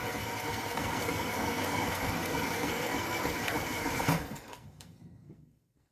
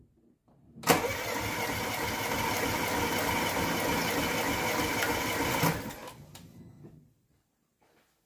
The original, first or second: second